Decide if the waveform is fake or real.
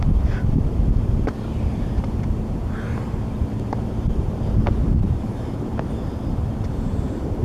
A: fake